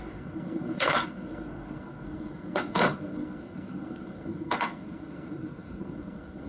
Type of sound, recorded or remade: remade